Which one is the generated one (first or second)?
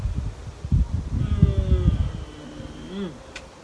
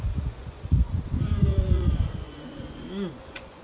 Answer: second